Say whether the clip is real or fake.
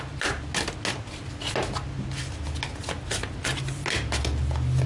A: real